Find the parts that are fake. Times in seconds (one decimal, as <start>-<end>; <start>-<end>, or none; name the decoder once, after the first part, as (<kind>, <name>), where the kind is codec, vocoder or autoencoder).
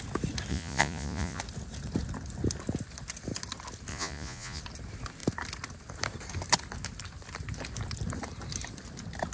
0.5-1.4 (vocoder, Vocos); 3.9-4.6